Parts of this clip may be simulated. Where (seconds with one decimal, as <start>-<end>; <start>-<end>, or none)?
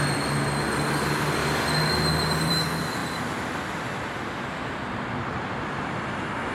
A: 1.4-2.5